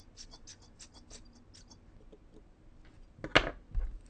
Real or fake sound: real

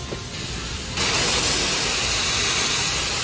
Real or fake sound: real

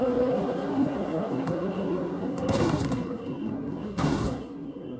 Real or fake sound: fake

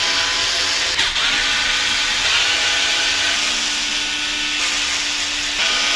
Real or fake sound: real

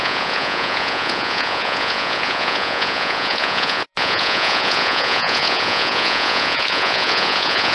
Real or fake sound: fake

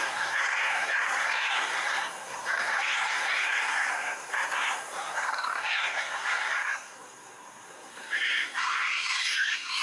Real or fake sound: fake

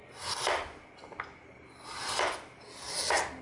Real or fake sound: real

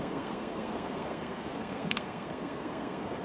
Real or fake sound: fake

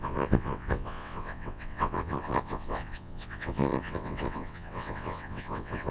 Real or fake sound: fake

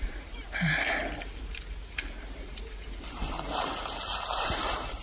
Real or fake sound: fake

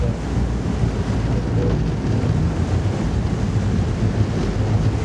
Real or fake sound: real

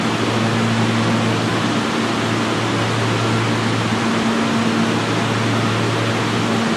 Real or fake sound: real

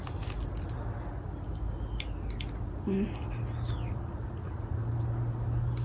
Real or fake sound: real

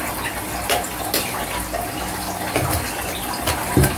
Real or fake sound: real